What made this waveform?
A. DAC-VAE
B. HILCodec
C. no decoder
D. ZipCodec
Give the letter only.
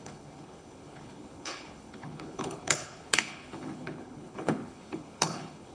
B